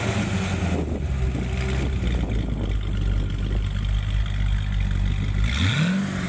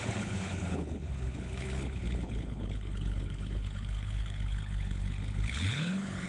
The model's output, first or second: second